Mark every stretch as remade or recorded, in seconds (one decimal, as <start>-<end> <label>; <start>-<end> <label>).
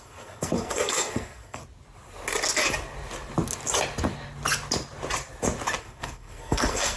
0.0-1.6 remade; 1.6-5.8 recorded; 5.8-7.0 remade